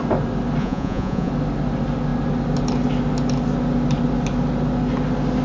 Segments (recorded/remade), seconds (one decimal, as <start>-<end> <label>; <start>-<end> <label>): 0.0-0.6 recorded; 0.6-1.3 remade; 1.3-5.4 recorded